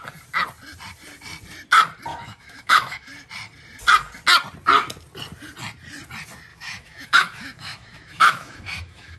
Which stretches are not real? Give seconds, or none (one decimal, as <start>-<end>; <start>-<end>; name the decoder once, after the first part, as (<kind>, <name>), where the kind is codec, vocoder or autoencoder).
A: 2.1-3.1 (autoencoder, DAC-VAE); 6.5-9.2